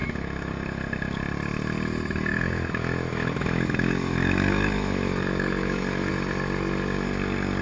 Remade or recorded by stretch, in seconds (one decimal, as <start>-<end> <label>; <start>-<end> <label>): 0.0-0.5 remade; 0.5-2.3 recorded; 2.3-6.1 remade; 6.1-7.6 recorded